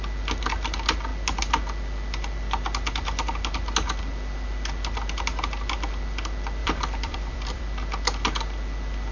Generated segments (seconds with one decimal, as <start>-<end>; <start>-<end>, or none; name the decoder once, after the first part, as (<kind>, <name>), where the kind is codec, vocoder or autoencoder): 6.6-7.6 (vocoder, BigVGAN v2)